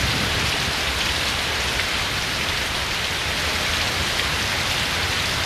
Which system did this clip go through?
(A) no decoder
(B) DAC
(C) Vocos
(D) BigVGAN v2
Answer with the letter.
D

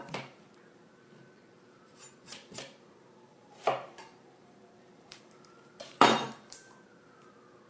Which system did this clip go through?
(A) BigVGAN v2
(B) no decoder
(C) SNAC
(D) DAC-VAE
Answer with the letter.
A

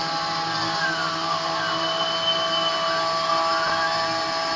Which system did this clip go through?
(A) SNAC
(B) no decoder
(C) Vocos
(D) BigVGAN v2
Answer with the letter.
B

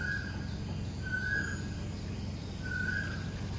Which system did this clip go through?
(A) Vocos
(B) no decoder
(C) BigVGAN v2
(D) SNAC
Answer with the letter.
B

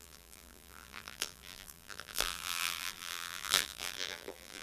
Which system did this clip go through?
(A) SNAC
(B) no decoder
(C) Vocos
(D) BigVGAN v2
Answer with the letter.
D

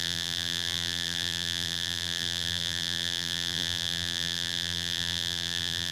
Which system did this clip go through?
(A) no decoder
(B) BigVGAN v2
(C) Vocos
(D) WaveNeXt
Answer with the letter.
B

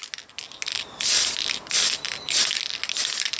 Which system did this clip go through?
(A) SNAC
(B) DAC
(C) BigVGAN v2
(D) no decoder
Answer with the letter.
D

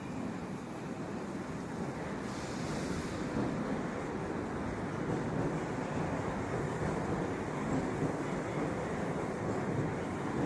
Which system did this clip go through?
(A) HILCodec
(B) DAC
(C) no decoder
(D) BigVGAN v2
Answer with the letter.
C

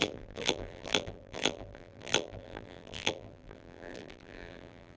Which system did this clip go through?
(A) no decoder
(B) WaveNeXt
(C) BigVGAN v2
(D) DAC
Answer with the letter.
C